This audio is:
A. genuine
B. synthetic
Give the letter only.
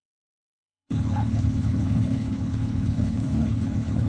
B